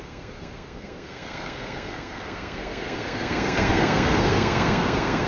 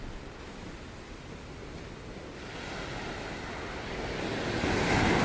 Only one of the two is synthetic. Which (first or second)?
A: first